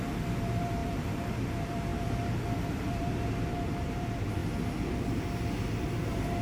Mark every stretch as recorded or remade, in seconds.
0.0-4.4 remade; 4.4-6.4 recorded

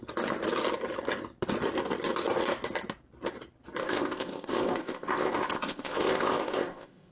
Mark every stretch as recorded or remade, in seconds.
0.0-3.8 recorded; 3.8-7.1 remade

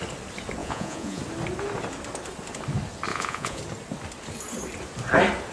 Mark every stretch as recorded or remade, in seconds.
0.0-0.6 recorded; 0.6-1.2 remade; 1.2-3.1 recorded; 3.1-3.6 remade; 3.6-5.5 recorded

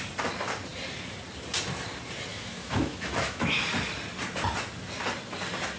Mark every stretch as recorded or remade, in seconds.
0.0-2.3 recorded; 2.3-3.6 remade; 3.6-5.8 recorded

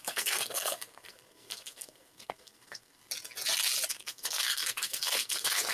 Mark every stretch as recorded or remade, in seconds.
0.0-3.0 remade; 3.0-3.9 recorded; 3.9-5.7 remade

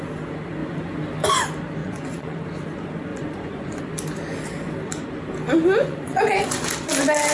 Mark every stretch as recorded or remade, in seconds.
0.0-1.8 recorded; 1.8-2.4 remade; 2.4-3.1 recorded; 3.1-3.8 remade; 3.8-5.8 recorded; 5.8-6.7 remade; 6.7-7.3 recorded

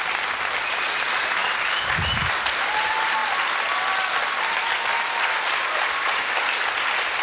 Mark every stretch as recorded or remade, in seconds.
0.0-7.2 recorded

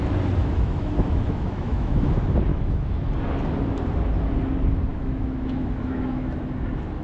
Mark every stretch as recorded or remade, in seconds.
0.0-0.4 recorded; 0.4-2.1 remade; 2.1-2.5 recorded; 2.5-3.1 remade; 3.1-4.9 recorded; 4.9-6.3 remade; 6.3-7.0 recorded